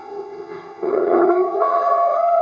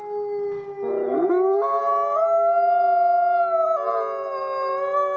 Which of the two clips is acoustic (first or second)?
second